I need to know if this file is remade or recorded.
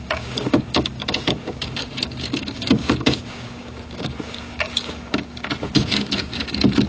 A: remade